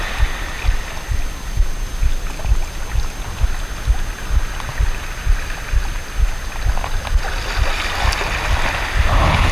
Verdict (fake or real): real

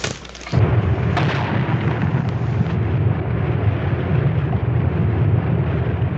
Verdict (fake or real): fake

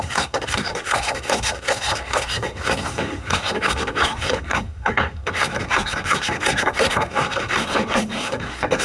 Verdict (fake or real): fake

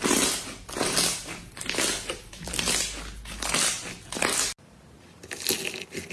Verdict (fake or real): real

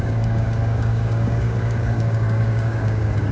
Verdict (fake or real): fake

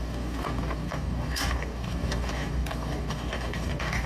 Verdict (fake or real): fake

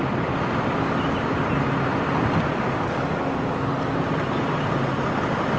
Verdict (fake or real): real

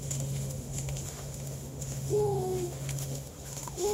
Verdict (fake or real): fake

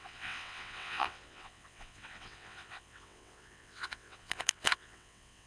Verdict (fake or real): fake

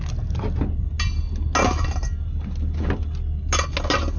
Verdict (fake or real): real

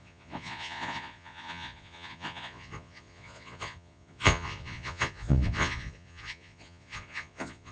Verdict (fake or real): fake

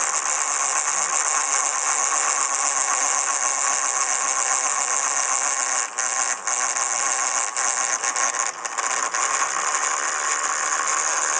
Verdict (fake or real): real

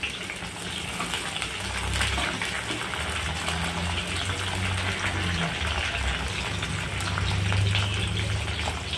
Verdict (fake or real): real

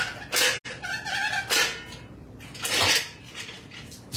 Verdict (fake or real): real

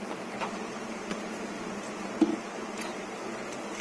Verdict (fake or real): fake